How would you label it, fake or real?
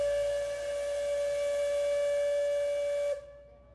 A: real